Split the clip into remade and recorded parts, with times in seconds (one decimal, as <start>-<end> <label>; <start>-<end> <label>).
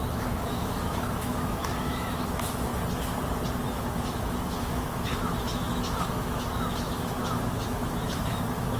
0.0-2.7 remade; 2.7-3.7 recorded; 3.7-8.8 remade